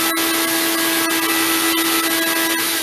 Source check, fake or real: real